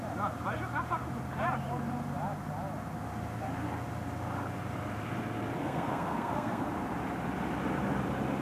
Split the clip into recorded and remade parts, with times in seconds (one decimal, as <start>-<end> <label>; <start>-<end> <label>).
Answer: 0.0-5.6 recorded; 5.6-6.6 remade; 6.6-8.4 recorded